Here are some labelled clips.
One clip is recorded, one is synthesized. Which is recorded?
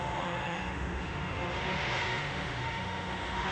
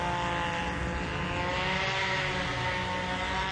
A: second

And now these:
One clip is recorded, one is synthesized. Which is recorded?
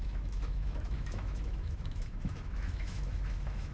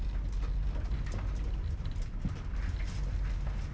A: second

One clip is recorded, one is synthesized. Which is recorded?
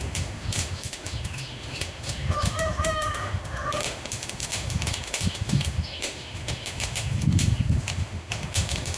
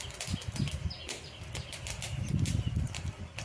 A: second